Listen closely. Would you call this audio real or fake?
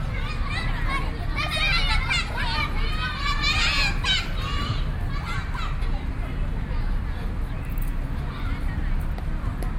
real